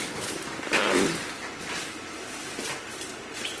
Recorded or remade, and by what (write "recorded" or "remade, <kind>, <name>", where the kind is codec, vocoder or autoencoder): recorded